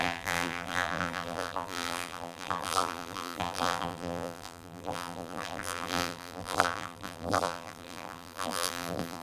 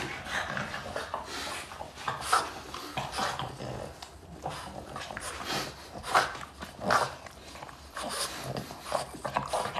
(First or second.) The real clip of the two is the second